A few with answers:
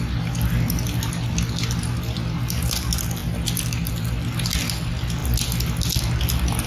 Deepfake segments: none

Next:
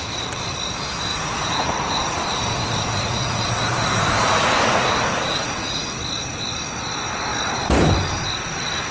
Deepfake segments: 1.1-6.0 (vocoder, Vocos)

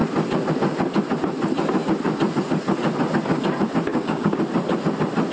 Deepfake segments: 3.9-4.4 (codec, DAC)

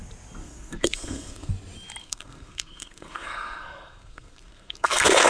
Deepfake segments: 0.4-1.5 (codec, SNAC); 2.0-5.3

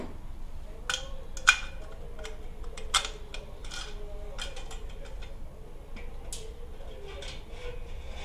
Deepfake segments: none

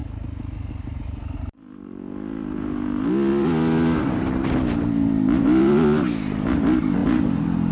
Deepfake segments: none

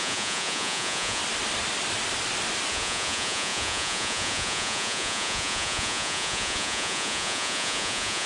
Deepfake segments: 0.0-1.2 (vocoder, Vocos); 2.7-8.3

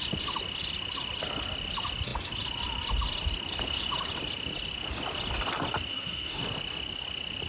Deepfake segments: 5.9-6.4 (codec, SNAC)